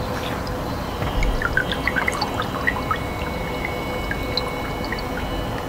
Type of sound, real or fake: real